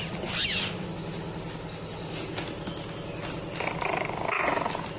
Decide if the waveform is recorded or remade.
recorded